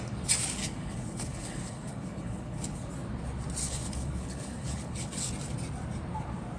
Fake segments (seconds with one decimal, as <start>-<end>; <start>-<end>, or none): 0.6-2.9; 3.6-5.3

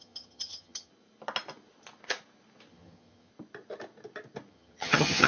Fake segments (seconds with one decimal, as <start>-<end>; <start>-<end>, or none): 0.0-0.9; 2.7-3.3; 4.5-5.3

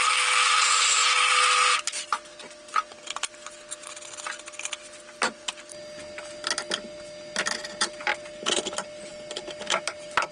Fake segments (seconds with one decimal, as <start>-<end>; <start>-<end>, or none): none